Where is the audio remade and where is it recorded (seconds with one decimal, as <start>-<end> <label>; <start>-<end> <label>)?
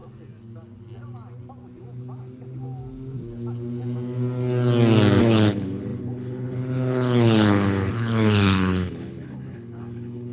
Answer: 0.0-5.2 recorded; 5.2-10.3 remade